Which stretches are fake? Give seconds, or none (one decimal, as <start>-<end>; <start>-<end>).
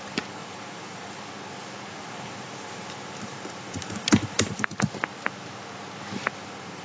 0.4-1.3; 2.0-4.7